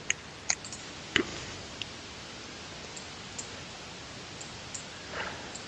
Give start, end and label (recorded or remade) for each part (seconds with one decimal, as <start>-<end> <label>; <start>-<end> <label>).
0.0-5.7 recorded